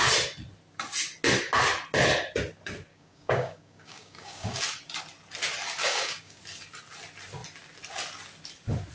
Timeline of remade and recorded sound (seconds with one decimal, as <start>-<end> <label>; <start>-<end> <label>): 0.0-2.9 recorded; 2.9-4.6 remade; 4.6-5.8 recorded; 5.8-6.4 remade; 6.4-8.9 recorded